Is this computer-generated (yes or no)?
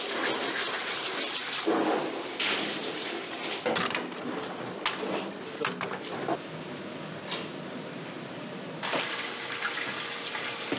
no